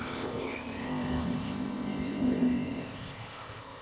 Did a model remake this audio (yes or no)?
yes